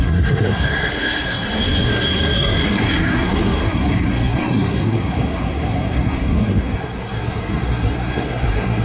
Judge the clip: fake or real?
fake